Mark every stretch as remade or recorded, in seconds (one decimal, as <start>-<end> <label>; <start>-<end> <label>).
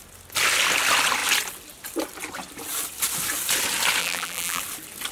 0.0-4.0 recorded; 4.0-4.6 remade; 4.6-5.1 recorded